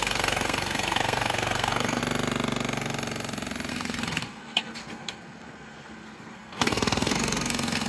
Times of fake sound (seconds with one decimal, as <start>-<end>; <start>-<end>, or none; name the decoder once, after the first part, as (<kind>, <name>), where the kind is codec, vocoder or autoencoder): 0.0-2.0 (codec, SNAC); 3.7-7.9